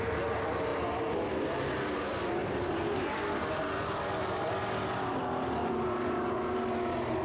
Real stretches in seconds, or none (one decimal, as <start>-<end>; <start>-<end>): 0.0-7.2